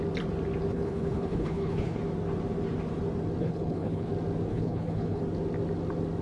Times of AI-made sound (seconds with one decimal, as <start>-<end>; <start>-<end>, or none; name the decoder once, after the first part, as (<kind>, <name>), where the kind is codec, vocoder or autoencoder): 0.7-2.0 (codec, HILCodec); 3.4-4.1; 4.5-5.2